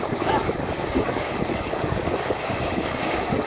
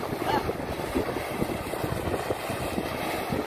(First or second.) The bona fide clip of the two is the second